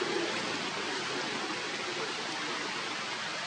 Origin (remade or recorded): recorded